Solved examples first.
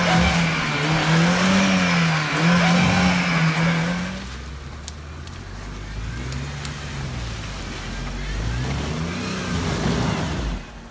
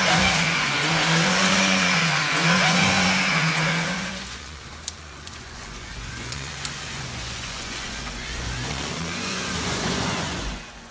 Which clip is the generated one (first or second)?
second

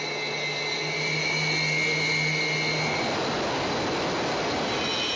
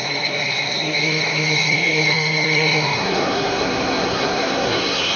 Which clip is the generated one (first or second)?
second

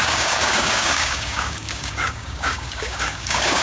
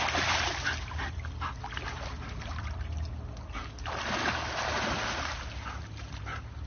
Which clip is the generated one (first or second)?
first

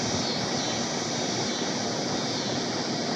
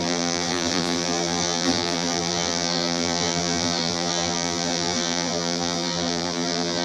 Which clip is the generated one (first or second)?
second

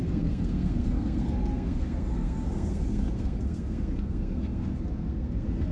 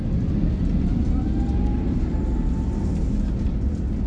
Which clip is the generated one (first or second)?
first